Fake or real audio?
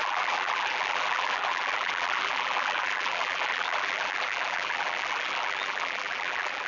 fake